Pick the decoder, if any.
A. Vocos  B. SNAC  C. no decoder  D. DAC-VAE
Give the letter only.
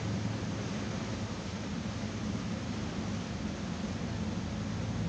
C